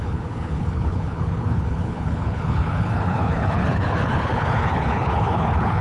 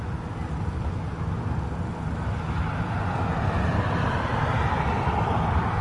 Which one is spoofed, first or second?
first